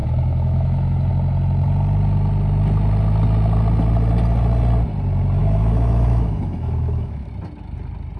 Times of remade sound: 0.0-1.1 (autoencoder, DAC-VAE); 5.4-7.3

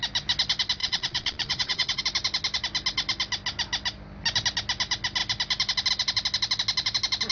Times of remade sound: 0.8-2.0 (vocoder, Vocos)

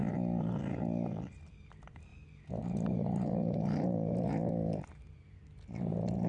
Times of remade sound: 1.3-2.1 (vocoder, BigVGAN v2); 2.6-4.4; 5.5-6.3

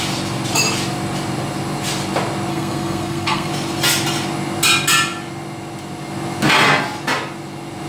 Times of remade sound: 2.5-3.5 (codec, SNAC)

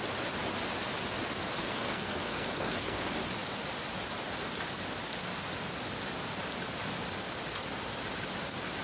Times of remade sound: 1.6-3.0 (codec, SNAC)

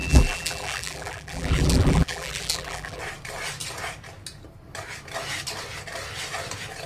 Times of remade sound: 0.0-3.0 (vocoder, BigVGAN v2)

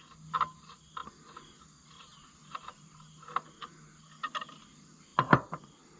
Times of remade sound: 5.1-6.0 (vocoder, BigVGAN v2)